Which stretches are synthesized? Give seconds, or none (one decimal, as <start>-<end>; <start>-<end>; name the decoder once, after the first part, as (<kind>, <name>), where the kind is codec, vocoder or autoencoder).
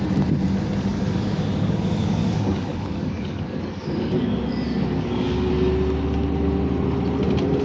0.9-5.5 (codec, DAC)